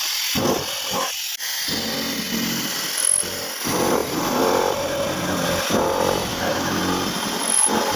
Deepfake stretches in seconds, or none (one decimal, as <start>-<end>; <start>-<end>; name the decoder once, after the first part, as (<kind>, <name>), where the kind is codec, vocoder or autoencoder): 6.3-6.8 (autoencoder, DAC-VAE)